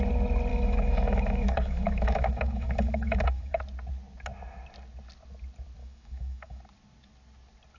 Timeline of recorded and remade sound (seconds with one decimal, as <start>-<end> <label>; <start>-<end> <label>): 0.0-0.5 recorded; 0.5-3.6 remade; 3.6-5.8 recorded; 5.8-6.6 remade; 6.6-7.8 recorded